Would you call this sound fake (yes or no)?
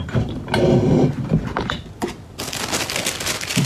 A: no